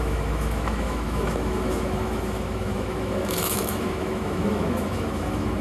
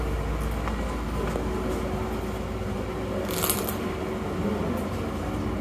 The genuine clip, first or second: second